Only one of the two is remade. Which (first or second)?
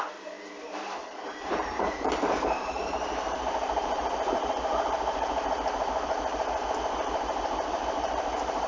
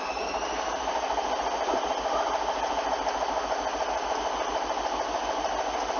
first